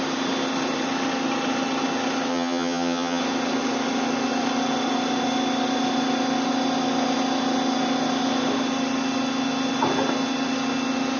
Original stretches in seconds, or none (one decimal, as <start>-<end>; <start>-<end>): 0.0-2.3; 3.2-11.2